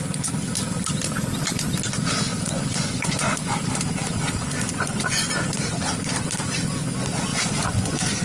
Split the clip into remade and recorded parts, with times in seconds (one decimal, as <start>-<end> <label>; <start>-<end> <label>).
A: 0.0-2.3 recorded; 2.3-3.6 remade; 3.6-4.0 recorded; 4.0-5.3 remade; 5.3-7.3 recorded; 7.3-8.2 remade